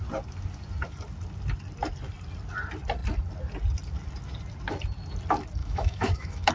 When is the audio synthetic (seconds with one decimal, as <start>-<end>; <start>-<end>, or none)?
5.6-6.5